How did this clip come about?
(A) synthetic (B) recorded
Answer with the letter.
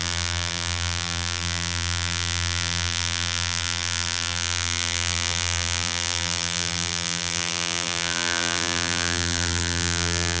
A